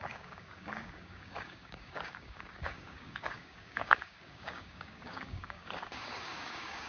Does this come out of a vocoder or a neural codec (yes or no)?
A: yes